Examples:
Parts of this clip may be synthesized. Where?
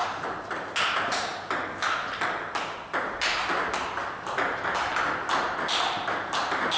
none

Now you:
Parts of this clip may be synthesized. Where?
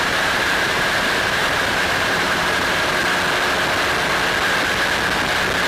0.0-3.0 (vocoder, BigVGAN v2)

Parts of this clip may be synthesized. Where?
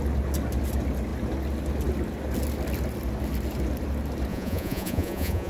4.3-5.5 (vocoder, Vocos)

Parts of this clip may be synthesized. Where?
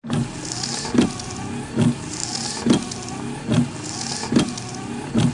none